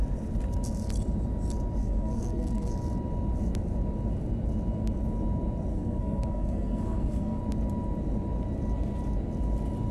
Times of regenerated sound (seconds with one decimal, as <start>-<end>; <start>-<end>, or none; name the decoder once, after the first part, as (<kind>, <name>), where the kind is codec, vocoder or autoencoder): 1.8-2.7 (codec, SNAC); 5.7-7.4